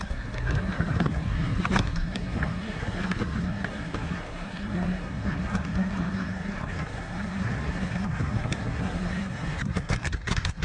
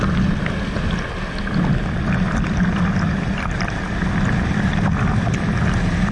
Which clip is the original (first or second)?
second